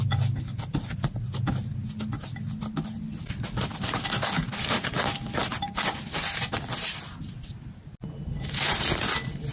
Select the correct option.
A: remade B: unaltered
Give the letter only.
B